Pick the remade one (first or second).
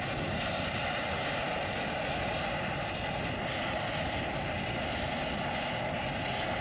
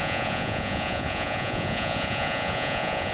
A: second